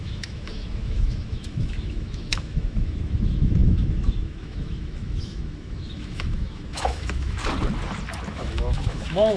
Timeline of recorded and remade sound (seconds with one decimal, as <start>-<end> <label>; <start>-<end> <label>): 0.0-7.4 remade; 7.4-8.3 recorded; 8.3-9.4 remade

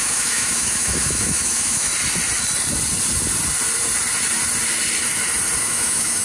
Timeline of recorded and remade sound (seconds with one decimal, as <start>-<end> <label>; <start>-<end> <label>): 0.0-1.9 remade; 1.9-5.6 recorded; 5.6-6.2 remade

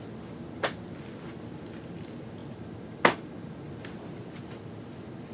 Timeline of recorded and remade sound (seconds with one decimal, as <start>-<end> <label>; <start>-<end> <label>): 0.0-5.3 recorded